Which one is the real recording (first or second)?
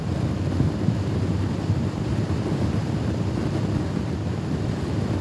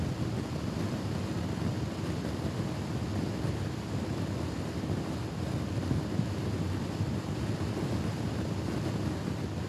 second